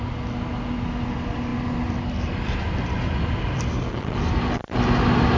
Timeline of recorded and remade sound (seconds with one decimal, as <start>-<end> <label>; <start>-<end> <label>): 0.0-5.4 recorded